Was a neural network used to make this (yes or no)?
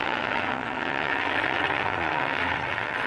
yes